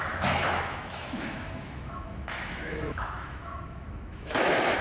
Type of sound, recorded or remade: remade